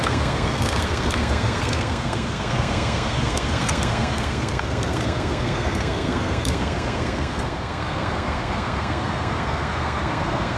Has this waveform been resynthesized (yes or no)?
yes